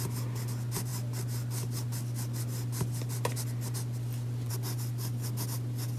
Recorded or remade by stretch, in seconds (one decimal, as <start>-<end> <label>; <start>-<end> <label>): 0.0-6.0 recorded